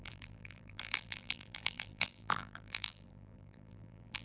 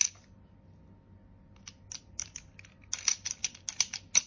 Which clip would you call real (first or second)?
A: second